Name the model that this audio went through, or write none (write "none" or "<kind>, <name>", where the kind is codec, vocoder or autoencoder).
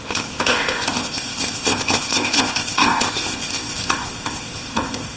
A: codec, ZipCodec